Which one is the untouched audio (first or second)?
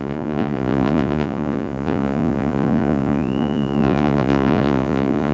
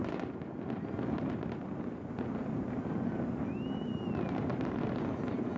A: second